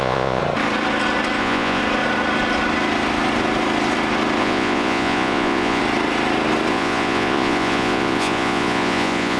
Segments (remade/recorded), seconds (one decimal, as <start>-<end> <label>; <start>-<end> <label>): 0.0-0.4 remade; 0.4-1.4 recorded; 1.4-1.8 remade; 1.8-4.4 recorded; 4.4-5.8 remade; 5.8-6.7 recorded; 6.7-9.4 remade